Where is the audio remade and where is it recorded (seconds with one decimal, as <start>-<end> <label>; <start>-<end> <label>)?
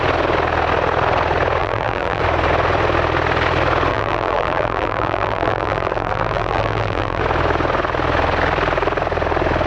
0.0-1.6 recorded; 1.6-2.2 remade; 2.2-3.9 recorded; 3.9-7.2 remade; 7.2-9.7 recorded